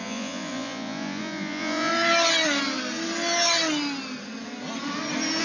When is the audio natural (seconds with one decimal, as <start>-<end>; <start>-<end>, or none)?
1.9-5.4